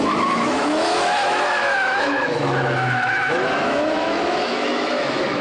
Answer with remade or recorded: remade